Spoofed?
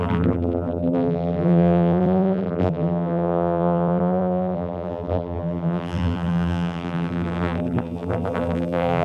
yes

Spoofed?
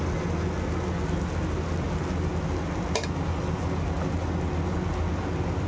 no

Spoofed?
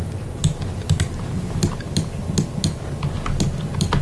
no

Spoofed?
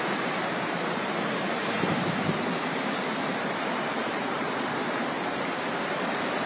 yes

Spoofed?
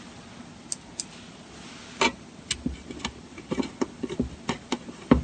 no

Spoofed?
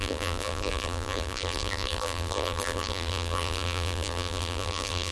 yes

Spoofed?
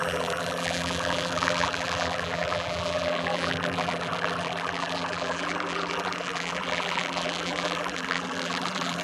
yes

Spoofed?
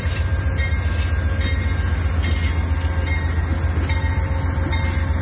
no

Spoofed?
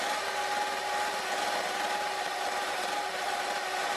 no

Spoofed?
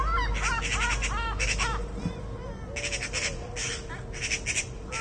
no